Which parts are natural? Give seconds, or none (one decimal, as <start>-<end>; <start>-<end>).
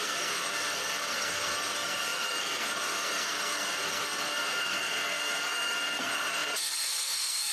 none